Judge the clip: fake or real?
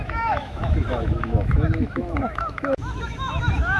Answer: fake